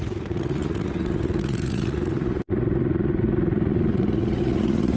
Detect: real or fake fake